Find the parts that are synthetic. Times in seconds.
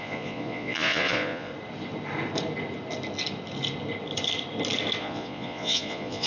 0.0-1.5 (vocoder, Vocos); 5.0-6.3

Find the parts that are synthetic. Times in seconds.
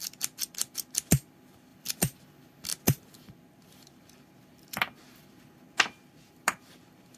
1.7-2.2 (vocoder, BigVGAN v2)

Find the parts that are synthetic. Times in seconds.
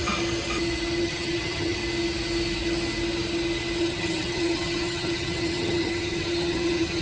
1.0-1.8 (vocoder, HiFi-GAN); 3.8-7.0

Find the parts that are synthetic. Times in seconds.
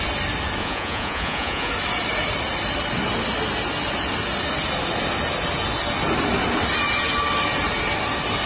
0.6-1.7 (vocoder, Vocos)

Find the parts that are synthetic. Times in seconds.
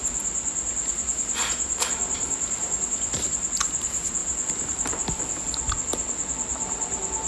0.0-3.3 (vocoder, BigVGAN v2); 4.2-5.4; 6.5-7.3